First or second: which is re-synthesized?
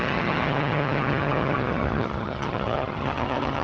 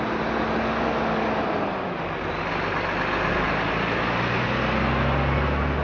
first